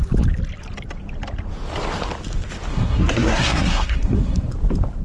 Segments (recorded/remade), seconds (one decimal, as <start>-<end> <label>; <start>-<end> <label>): 0.0-2.7 recorded; 2.7-4.5 remade; 4.5-5.0 recorded